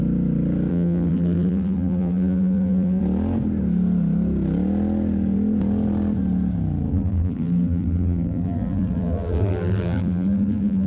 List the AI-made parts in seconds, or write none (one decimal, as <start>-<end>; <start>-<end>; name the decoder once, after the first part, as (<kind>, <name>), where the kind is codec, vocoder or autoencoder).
0.7-3.0 (vocoder, BigVGAN v2); 6.9-10.9